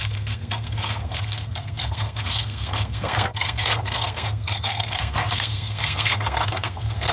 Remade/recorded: remade